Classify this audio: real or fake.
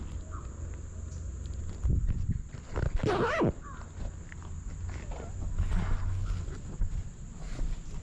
real